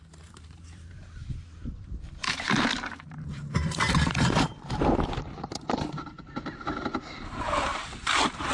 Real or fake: fake